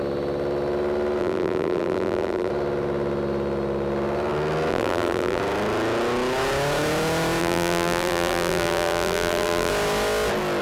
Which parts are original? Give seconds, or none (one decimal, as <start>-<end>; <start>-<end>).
0.0-1.2; 2.5-4.7; 5.4-7.4; 9.7-10.6